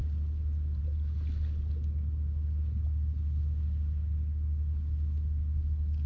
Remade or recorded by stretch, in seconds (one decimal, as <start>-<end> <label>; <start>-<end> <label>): 0.0-6.1 recorded